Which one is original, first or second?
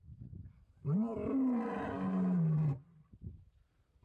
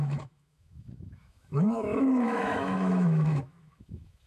first